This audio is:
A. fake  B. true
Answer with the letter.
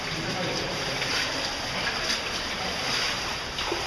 B